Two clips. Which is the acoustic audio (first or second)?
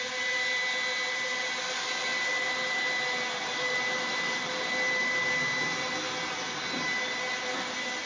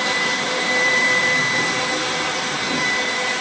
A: first